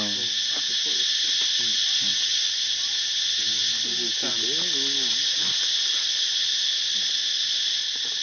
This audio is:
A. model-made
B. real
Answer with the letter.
B